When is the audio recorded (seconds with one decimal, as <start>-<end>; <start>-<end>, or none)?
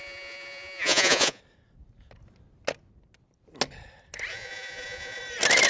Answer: 1.4-4.3; 5.2-5.7